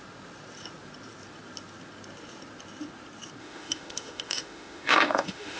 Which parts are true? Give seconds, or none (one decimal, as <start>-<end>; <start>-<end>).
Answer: 0.0-3.4